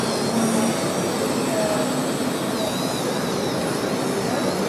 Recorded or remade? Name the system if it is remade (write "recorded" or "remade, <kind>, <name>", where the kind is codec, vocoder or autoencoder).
recorded